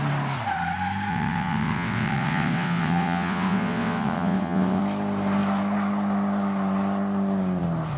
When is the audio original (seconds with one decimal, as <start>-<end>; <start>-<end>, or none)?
0.0-1.1; 4.8-8.0

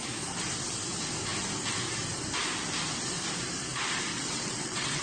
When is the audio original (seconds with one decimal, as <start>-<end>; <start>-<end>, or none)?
0.0-4.1

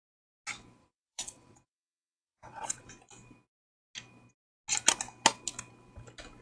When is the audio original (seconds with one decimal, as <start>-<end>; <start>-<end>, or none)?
0.0-0.8; 2.9-6.4

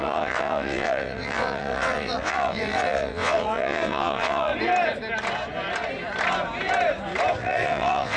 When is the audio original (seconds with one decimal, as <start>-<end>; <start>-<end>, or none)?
4.5-7.4

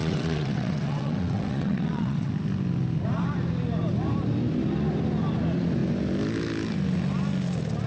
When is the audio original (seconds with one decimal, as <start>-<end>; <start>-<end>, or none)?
2.3-7.9

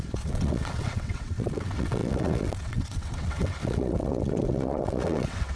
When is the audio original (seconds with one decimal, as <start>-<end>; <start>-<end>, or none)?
none